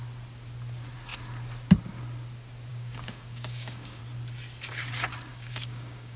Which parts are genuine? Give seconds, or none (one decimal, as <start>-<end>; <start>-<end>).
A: 0.0-2.7; 4.0-5.3